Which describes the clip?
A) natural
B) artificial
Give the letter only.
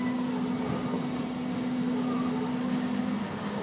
A